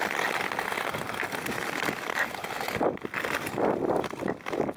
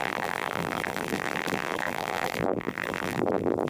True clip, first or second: first